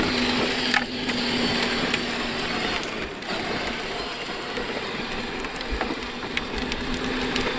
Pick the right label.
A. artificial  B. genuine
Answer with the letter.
B